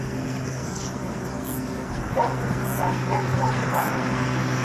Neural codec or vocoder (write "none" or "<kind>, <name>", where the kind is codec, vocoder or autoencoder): codec, SNAC